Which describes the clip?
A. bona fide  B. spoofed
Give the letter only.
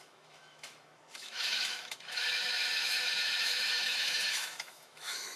B